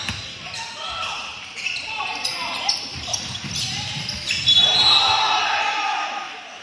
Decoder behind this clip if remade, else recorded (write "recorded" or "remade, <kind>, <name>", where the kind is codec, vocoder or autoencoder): recorded